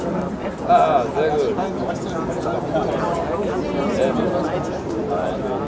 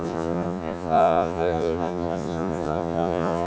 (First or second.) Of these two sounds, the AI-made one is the second